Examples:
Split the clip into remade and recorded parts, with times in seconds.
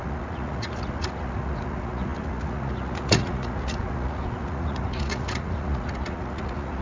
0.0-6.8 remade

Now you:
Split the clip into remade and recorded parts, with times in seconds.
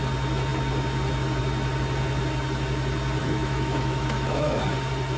0.0-3.2 recorded; 3.2-4.6 remade; 4.6-5.2 recorded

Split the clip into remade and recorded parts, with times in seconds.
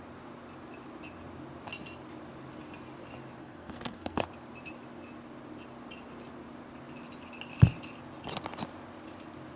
0.0-3.4 recorded; 3.4-4.3 remade; 4.3-9.6 recorded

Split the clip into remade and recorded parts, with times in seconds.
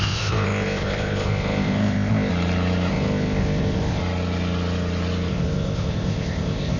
0.0-2.3 remade; 2.3-2.9 recorded; 2.9-4.0 remade; 4.0-5.3 recorded; 5.3-6.8 remade